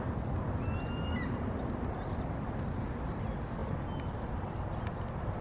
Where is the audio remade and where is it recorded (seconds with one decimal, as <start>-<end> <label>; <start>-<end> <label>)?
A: 0.0-5.4 recorded